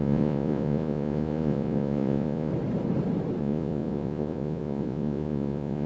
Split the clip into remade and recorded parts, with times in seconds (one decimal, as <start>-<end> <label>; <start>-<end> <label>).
0.0-2.5 remade; 2.5-3.4 recorded; 3.4-5.9 remade